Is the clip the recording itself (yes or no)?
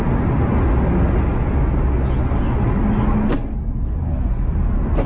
yes